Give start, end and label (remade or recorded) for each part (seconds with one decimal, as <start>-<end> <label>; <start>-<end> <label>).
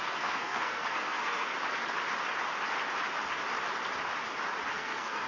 0.0-1.5 remade; 1.5-4.7 recorded; 4.7-5.3 remade